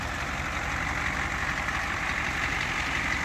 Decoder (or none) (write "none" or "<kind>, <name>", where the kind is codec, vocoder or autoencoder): vocoder, BigVGAN v2